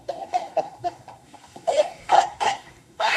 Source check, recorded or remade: remade